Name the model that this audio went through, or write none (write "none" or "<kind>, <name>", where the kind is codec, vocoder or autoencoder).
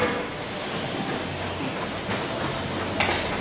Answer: none